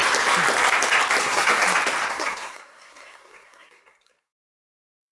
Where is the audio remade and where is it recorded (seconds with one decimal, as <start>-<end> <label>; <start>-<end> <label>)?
0.0-1.2 recorded; 1.2-1.6 remade; 1.6-2.1 recorded; 2.1-5.1 remade